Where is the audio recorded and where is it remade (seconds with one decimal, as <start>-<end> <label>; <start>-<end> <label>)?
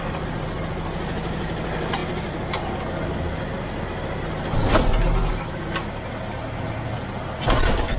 0.0-8.0 recorded